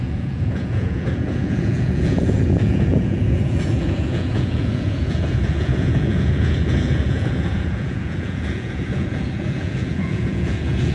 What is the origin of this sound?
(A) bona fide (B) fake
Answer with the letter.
B